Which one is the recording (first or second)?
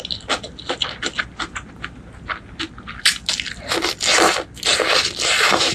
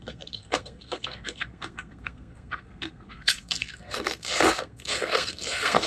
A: first